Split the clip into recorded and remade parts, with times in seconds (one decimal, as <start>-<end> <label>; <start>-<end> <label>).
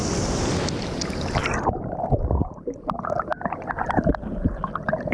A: 0.0-5.1 recorded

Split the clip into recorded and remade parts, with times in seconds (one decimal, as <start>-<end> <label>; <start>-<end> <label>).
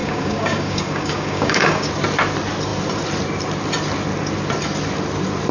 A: 0.0-1.9 remade; 1.9-5.5 recorded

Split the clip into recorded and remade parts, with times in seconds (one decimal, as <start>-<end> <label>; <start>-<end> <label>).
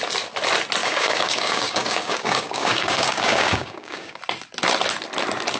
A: 0.0-0.8 recorded; 0.8-4.2 remade; 4.2-5.6 recorded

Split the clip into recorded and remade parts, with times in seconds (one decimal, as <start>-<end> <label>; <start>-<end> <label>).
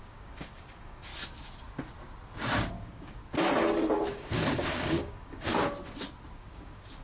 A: 0.0-1.1 remade; 1.1-2.7 recorded; 2.7-3.2 remade; 3.2-4.1 recorded; 4.1-5.5 remade; 5.5-6.3 recorded; 6.3-7.0 remade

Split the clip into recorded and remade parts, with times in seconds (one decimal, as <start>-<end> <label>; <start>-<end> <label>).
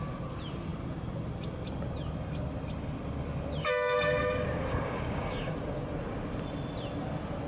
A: 0.0-3.6 recorded; 3.6-5.5 remade; 5.5-7.5 recorded